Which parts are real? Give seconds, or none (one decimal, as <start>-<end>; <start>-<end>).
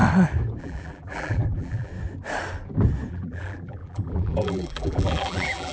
0.0-0.6; 1.9-3.1